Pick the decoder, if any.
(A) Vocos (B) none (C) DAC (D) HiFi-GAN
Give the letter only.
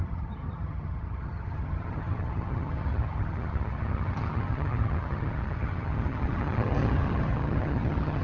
D